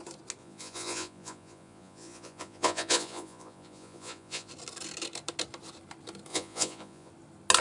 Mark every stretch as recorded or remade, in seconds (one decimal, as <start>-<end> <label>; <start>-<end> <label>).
0.0-0.4 recorded; 0.4-4.5 remade; 4.5-6.3 recorded; 6.3-7.1 remade; 7.1-7.6 recorded